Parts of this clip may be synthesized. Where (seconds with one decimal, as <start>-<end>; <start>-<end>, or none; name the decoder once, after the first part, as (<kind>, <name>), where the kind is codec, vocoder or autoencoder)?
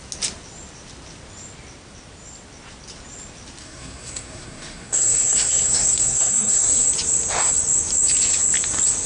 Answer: 3.6-6.9 (codec, SNAC)